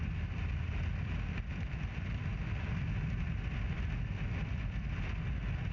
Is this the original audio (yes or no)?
yes